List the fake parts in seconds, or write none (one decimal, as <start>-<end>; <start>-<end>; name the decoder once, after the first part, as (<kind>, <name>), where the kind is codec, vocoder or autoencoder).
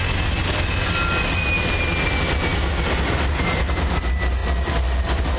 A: none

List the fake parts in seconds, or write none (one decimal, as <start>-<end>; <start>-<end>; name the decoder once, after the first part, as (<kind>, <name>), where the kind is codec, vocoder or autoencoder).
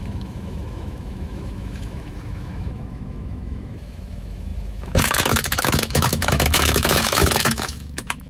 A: 0.0-8.3 (autoencoder, DAC-VAE)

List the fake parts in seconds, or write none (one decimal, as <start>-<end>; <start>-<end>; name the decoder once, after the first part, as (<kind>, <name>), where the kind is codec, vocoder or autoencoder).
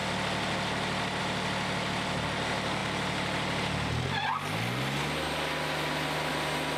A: none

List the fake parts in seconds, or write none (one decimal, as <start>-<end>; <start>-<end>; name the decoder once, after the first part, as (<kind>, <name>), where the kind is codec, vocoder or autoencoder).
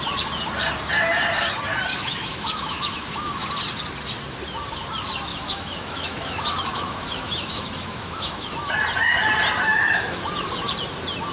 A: 1.9-3.5 (autoencoder, DAC-VAE); 5.3-8.7; 9.7-10.3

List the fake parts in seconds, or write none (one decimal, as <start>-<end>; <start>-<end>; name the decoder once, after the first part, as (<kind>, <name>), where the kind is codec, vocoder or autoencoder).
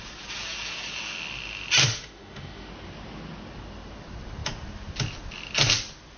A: 1.8-2.7 (autoencoder, DAC-VAE)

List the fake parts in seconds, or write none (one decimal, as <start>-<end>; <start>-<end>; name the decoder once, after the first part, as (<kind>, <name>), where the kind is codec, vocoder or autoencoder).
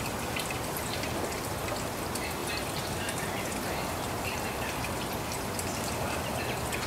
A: none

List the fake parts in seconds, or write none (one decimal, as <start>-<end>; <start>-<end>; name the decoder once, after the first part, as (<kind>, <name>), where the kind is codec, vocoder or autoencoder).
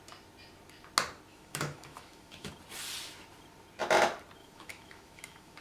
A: 1.3-2.5 (autoencoder, DAC-VAE); 4.4-5.6